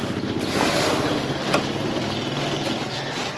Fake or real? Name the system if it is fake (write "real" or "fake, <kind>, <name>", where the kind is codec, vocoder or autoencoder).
real